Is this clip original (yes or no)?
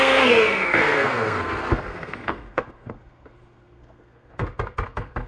no